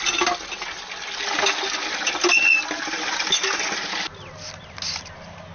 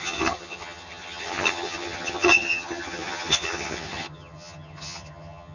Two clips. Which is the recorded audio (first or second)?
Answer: first